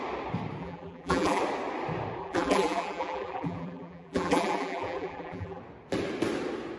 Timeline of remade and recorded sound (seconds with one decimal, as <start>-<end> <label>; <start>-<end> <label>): 0.0-0.6 recorded; 0.6-1.4 remade; 1.4-2.2 recorded; 2.2-5.6 remade; 5.6-6.8 recorded

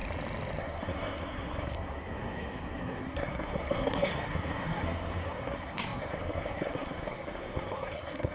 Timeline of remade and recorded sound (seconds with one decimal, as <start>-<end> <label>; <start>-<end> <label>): 0.0-0.6 recorded; 0.6-8.3 remade

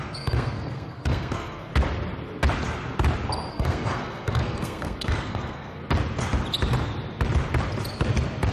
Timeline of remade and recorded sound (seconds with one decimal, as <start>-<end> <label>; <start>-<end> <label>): 0.0-1.7 remade; 1.7-3.5 recorded; 3.5-5.8 remade; 5.8-8.5 recorded

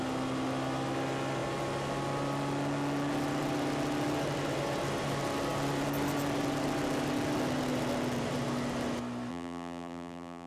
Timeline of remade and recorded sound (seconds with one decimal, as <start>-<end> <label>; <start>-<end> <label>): 0.0-9.3 recorded; 9.3-10.5 remade

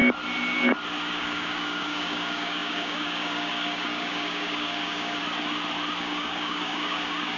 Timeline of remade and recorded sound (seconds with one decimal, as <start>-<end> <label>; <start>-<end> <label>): 0.0-1.1 recorded; 1.1-5.2 remade; 5.2-6.0 recorded; 6.0-7.4 remade

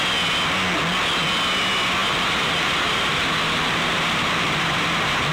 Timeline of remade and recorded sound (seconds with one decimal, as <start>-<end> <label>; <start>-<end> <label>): 0.0-2.0 recorded; 2.0-5.3 remade

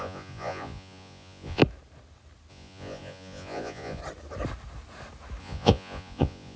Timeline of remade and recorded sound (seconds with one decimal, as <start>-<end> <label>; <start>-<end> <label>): 0.0-1.6 remade; 1.6-2.5 recorded; 2.5-4.0 remade; 4.0-5.4 recorded; 5.4-6.6 remade

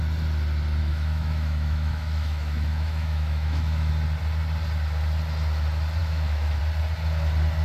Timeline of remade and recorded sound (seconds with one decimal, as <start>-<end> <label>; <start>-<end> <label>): 0.0-0.8 recorded; 0.8-3.9 remade; 3.9-6.0 recorded; 6.0-6.6 remade; 6.6-7.6 recorded